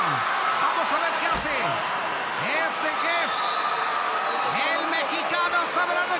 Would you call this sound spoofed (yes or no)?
no